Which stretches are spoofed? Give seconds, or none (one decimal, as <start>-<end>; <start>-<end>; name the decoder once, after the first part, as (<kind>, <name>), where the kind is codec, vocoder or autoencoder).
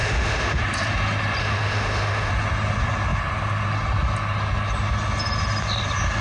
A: 0.0-0.6 (autoencoder, DAC-VAE); 1.4-2.3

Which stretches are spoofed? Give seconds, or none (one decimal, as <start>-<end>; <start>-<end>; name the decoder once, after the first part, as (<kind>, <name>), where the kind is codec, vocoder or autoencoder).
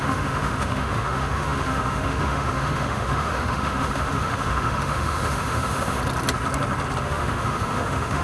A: 0.0-6.0 (autoencoder, DAC-VAE); 7.0-8.2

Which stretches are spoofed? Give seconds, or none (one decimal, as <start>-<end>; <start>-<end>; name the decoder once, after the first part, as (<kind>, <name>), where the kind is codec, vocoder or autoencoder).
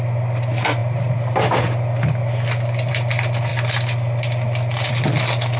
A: none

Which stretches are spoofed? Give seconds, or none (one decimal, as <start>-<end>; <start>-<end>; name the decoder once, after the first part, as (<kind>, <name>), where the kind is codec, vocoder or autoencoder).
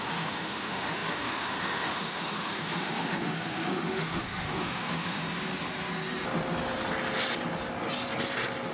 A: 0.0-5.2 (autoencoder, DAC-VAE)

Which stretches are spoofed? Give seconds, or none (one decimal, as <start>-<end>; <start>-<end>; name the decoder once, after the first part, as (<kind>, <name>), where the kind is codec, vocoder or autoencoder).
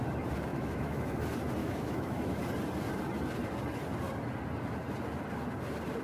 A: 0.5-1.2 (autoencoder, DAC-VAE); 1.6-2.4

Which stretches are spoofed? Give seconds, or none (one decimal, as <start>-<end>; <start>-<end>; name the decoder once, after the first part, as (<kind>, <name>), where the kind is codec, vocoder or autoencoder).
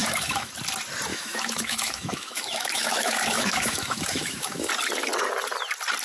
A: 0.0-0.5 (autoencoder, DAC-VAE); 1.1-4.7